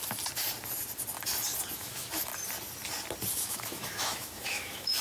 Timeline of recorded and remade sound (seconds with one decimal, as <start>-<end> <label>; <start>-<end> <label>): 0.0-1.7 recorded; 1.7-2.3 remade; 2.3-3.3 recorded; 3.3-5.0 remade